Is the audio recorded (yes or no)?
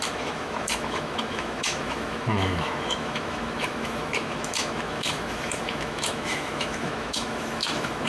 no